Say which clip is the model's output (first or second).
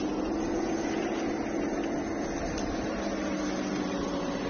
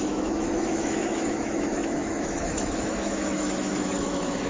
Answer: second